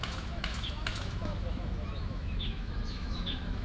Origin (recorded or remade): remade